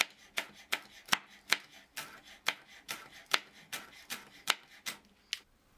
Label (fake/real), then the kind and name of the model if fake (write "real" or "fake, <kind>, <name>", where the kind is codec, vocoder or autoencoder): real